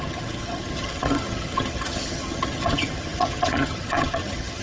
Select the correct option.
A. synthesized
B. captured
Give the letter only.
A